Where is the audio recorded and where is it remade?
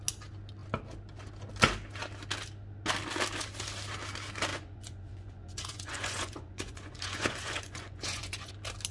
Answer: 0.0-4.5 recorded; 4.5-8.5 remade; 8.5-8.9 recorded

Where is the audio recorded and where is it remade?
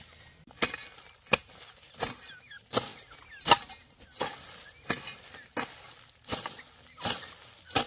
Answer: 0.0-7.9 recorded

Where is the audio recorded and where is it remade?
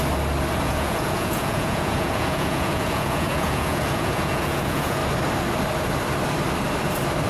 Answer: 0.0-0.6 recorded; 0.6-5.0 remade; 5.0-7.3 recorded